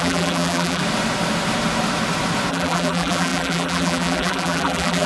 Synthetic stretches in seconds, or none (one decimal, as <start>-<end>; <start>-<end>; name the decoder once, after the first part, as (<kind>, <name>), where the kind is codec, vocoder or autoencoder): 0.0-0.8 (vocoder, BigVGAN v2); 2.5-5.1